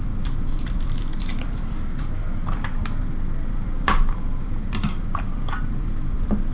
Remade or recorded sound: remade